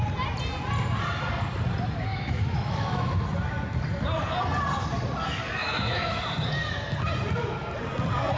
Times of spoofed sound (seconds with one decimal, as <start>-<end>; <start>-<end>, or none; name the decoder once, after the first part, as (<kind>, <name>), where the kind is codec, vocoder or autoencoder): 2.1-3.1 (autoencoder, DAC-VAE); 5.6-6.2